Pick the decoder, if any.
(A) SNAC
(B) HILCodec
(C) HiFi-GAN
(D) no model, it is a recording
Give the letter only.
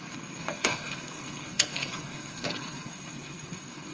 A